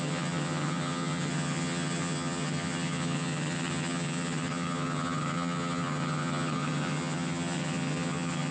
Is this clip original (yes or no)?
no